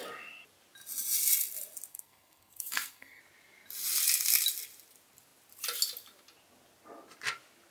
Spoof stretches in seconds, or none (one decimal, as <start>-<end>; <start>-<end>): 1.9-3.2